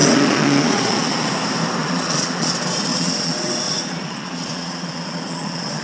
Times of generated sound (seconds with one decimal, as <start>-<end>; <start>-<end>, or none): 0.0-1.3; 1.8-2.5; 2.9-5.8